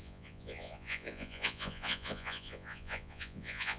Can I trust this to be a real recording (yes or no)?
no